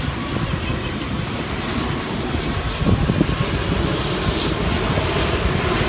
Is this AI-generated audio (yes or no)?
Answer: no